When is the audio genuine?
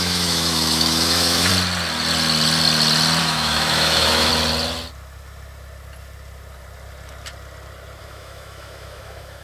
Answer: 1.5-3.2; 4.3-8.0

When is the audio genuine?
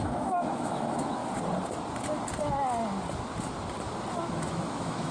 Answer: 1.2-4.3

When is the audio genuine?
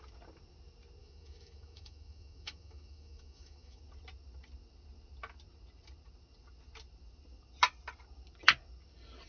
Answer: 0.0-1.0; 3.8-9.3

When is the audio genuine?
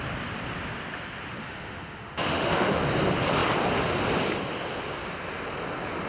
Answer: 0.0-1.4; 2.8-6.1